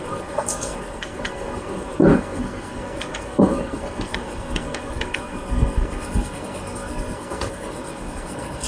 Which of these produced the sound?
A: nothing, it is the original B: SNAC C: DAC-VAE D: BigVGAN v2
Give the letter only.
B